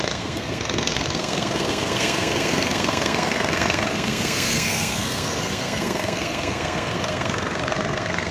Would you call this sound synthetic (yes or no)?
yes